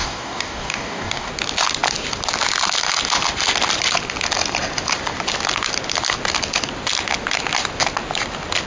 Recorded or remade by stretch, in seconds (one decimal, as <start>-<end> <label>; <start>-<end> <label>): 0.0-1.3 remade; 1.3-8.7 recorded

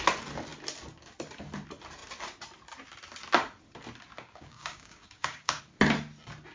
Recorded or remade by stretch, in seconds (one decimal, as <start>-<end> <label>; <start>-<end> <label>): 0.0-4.1 recorded; 4.1-5.6 remade; 5.6-6.5 recorded

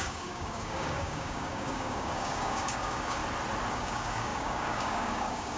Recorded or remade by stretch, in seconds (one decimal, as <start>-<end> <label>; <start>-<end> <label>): 0.0-3.2 remade; 3.2-3.7 recorded; 3.7-5.6 remade